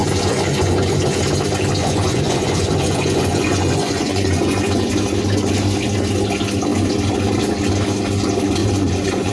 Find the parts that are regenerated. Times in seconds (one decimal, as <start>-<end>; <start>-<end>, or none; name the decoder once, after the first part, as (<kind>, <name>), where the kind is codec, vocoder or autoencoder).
0.0-1.2 (vocoder, Vocos); 1.8-4.9; 8.6-9.3